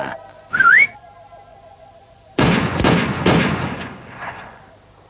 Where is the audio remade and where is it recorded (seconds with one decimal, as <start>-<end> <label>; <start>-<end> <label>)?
0.0-0.5 recorded; 0.5-1.1 remade; 1.1-1.5 recorded; 1.5-4.6 remade; 4.6-5.1 recorded